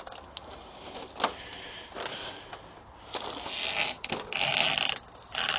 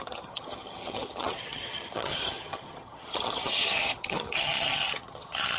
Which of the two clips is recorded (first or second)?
first